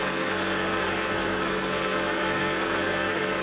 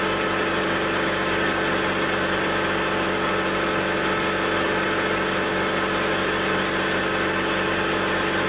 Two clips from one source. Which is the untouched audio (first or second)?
second